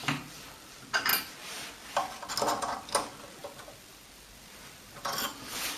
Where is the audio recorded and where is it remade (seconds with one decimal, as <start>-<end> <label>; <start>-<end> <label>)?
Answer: 0.0-0.7 remade; 0.7-3.4 recorded; 3.4-5.8 remade